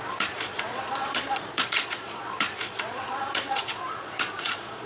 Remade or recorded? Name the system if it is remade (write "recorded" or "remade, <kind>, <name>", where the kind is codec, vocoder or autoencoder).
remade, vocoder, Vocos